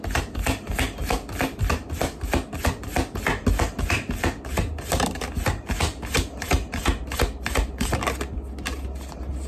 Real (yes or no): yes